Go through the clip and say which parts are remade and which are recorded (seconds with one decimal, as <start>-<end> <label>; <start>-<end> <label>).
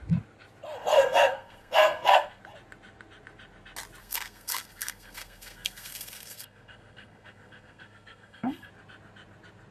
0.0-0.9 recorded; 0.9-2.4 remade; 2.4-4.0 recorded; 4.0-8.7 remade; 8.7-9.7 recorded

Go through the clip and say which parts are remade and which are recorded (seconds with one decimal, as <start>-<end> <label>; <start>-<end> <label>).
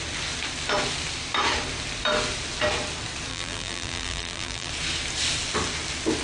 0.0-3.3 recorded; 3.3-4.7 remade; 4.7-6.2 recorded